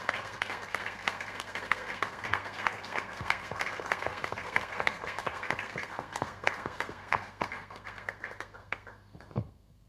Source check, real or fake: fake